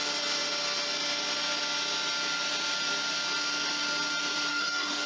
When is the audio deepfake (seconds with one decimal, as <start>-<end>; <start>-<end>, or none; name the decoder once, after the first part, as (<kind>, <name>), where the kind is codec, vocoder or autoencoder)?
4.5-5.1 (codec, DAC)